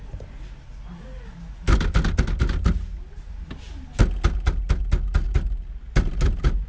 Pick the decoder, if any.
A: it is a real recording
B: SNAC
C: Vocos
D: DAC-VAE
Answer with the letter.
A